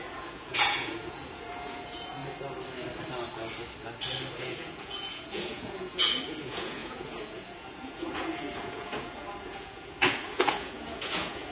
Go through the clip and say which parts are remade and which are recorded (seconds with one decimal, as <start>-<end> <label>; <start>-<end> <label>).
0.0-2.2 remade; 2.2-4.4 recorded; 4.4-11.5 remade

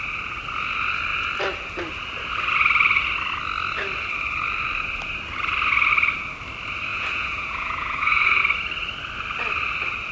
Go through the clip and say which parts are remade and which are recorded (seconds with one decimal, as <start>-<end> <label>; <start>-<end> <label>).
0.0-6.9 recorded; 6.9-8.4 remade; 8.4-10.1 recorded